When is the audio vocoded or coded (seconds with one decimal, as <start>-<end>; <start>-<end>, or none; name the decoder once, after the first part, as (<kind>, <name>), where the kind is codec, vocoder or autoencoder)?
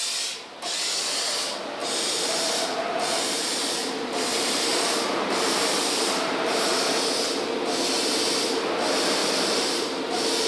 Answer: 1.8-3.5 (vocoder, BigVGAN v2); 4.3-6.6; 9.2-10.0